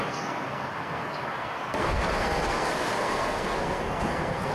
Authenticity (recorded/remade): remade